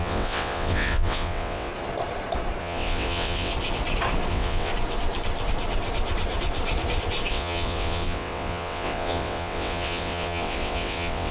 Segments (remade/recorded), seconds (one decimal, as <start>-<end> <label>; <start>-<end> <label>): 0.0-1.7 remade; 1.7-2.6 recorded; 2.6-3.5 remade; 3.5-4.3 recorded; 4.3-4.7 remade; 4.7-7.3 recorded; 7.3-11.3 remade